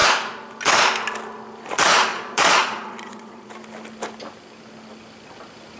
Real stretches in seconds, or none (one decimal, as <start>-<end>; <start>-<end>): 0.0-2.1; 3.5-5.8